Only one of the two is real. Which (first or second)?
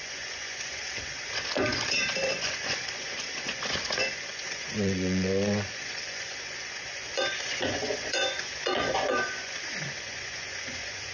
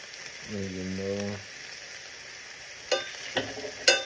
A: second